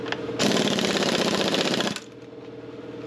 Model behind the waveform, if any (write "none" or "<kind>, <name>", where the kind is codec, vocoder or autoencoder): none